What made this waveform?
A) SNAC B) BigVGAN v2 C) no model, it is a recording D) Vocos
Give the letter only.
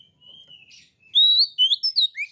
C